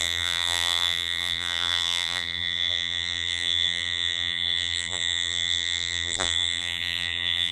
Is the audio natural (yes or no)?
no